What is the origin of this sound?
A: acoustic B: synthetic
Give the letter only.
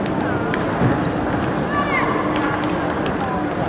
A